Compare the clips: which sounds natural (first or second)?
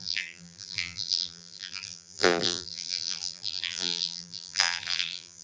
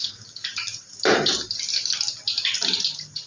second